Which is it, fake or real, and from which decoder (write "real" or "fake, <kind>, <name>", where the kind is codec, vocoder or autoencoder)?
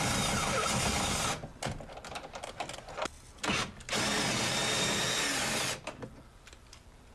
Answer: real